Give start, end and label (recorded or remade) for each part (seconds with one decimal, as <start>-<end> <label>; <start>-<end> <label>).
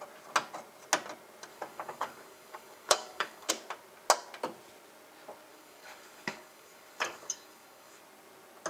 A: 0.0-1.5 recorded; 1.5-3.5 remade; 3.5-5.5 recorded; 5.5-8.0 remade; 8.0-8.7 recorded